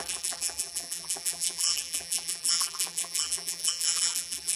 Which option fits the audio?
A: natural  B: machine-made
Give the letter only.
B